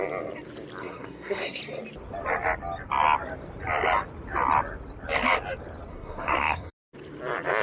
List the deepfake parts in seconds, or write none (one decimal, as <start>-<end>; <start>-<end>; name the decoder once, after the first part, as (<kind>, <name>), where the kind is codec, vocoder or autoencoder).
0.8-1.6 (codec, SNAC); 5.9-6.7

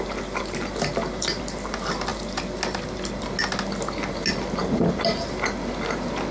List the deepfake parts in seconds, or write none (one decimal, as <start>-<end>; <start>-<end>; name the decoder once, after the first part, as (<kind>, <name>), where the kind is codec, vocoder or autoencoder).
none

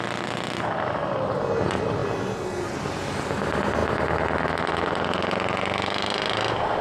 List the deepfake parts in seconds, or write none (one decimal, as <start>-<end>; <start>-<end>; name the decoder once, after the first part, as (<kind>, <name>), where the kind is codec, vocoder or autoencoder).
none

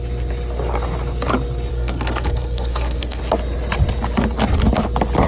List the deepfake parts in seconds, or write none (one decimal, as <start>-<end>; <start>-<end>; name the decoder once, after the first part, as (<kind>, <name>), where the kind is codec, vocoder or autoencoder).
1.7-3.2 (codec, SNAC)

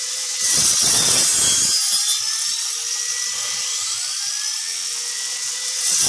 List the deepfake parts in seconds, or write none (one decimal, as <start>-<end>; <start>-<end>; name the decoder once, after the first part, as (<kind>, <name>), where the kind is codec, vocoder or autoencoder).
0.0-1.3 (vocoder, WaveNeXt); 4.6-6.1

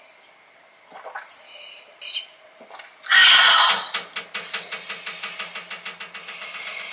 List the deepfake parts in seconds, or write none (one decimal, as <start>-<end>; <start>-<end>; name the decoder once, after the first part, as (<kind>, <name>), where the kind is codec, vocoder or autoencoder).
none

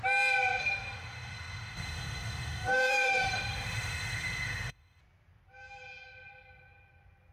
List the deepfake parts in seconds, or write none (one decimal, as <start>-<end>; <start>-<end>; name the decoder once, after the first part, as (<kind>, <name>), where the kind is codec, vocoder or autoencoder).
0.6-5.0 (autoencoder, DAC-VAE)

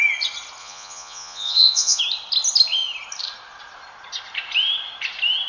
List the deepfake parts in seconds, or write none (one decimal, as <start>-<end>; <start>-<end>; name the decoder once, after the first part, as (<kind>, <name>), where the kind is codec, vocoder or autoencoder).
0.6-2.0 (vocoder, Vocos)